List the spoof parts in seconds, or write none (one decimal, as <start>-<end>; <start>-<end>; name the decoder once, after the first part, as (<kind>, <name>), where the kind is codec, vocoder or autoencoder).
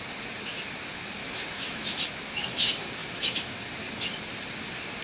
1.2-2.0 (autoencoder, DAC-VAE); 3.0-3.6